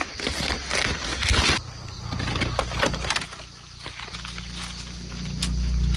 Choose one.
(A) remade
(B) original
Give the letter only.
B